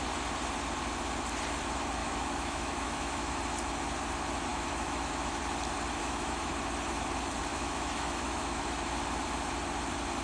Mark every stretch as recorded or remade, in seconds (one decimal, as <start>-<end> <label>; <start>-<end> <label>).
0.0-2.0 recorded; 2.0-3.3 remade; 3.3-4.5 recorded; 4.5-5.4 remade; 5.4-6.0 recorded; 6.0-6.5 remade; 6.5-7.5 recorded; 7.5-8.9 remade; 8.9-10.2 recorded